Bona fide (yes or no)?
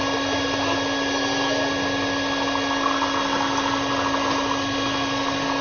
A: yes